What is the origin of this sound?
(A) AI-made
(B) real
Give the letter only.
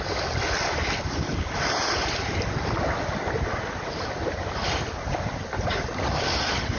B